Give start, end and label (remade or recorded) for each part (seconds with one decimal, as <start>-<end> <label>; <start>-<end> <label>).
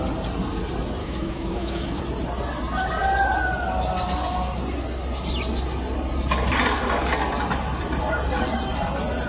0.0-1.0 recorded; 1.0-2.0 remade; 2.0-9.3 recorded